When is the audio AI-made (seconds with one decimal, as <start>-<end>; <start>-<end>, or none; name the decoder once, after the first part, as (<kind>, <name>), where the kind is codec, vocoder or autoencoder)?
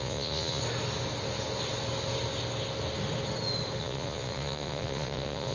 0.0-0.6 (vocoder, Vocos); 3.8-5.5